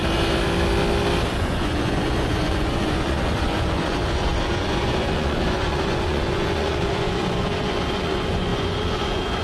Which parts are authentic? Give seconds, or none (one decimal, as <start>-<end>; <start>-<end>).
0.0-1.3